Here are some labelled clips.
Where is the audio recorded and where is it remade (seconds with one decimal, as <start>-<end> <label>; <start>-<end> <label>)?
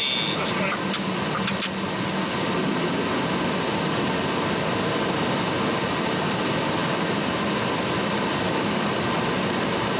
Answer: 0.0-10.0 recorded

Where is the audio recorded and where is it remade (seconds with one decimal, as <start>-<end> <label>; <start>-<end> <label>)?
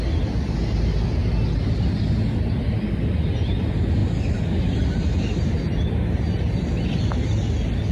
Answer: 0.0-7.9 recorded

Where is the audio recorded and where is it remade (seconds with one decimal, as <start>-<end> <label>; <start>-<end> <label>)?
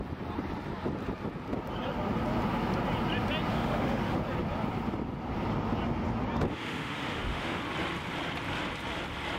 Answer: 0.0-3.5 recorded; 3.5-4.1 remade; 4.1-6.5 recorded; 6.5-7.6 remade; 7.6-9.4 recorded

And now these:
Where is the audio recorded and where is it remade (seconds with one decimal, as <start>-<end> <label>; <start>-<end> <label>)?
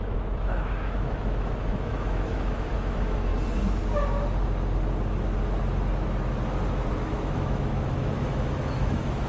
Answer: 0.0-3.3 remade; 3.3-7.1 recorded; 7.1-9.3 remade